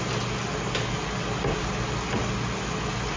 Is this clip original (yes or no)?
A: yes